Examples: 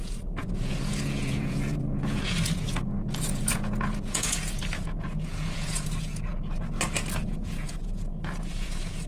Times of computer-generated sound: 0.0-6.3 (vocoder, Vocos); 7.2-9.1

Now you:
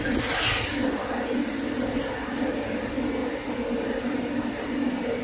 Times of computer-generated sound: none

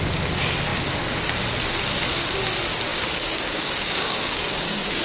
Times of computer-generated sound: 2.9-5.0 (codec, DAC)

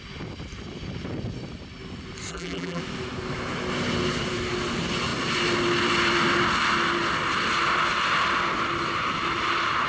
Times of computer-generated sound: 2.3-2.8 (vocoder, BigVGAN v2)

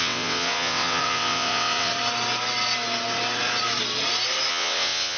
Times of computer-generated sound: 0.0-1.9 (vocoder, WaveNeXt); 4.5-5.2

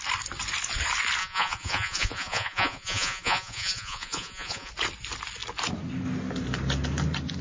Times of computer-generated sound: 1.2-4.7 (vocoder, Vocos)